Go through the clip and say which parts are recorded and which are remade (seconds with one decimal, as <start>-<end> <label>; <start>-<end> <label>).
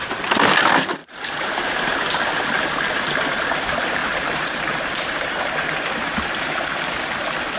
0.0-1.0 recorded; 1.0-2.0 remade; 2.0-4.0 recorded; 4.0-6.8 remade; 6.8-7.6 recorded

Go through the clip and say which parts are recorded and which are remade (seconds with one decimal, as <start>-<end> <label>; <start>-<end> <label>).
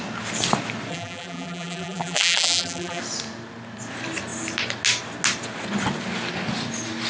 0.0-0.9 recorded; 0.9-3.0 remade; 3.0-7.1 recorded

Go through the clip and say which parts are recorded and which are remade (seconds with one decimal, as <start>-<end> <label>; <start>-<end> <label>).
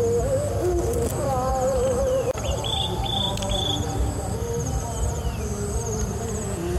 0.0-1.5 recorded; 1.5-5.4 remade; 5.4-6.8 recorded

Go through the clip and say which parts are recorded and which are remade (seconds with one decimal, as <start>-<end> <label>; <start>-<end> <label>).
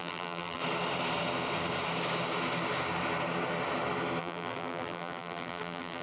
0.0-0.6 remade; 0.6-4.2 recorded; 4.2-6.0 remade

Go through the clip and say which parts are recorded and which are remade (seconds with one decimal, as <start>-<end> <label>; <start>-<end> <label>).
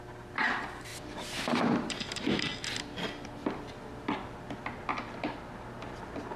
0.0-0.9 remade; 0.9-1.6 recorded; 1.6-2.5 remade; 2.5-6.4 recorded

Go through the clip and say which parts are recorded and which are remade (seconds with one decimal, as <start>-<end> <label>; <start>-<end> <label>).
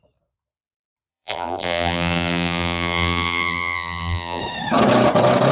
0.0-1.1 recorded; 1.1-4.4 remade; 4.4-5.5 recorded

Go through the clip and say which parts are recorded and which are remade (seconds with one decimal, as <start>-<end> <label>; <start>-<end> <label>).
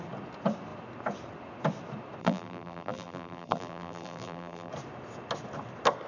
0.0-2.2 recorded; 2.2-4.7 remade; 4.7-6.1 recorded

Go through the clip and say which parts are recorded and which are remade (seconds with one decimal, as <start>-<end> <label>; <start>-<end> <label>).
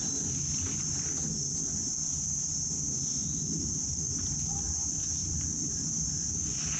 0.0-3.2 recorded; 3.2-4.2 remade; 4.2-5.2 recorded; 5.2-5.8 remade; 5.8-6.8 recorded